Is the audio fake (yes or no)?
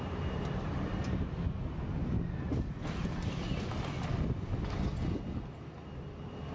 no